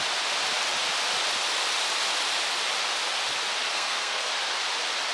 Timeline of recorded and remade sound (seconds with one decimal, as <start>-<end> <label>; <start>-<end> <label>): 0.0-3.7 recorded; 3.7-4.3 remade; 4.3-5.1 recorded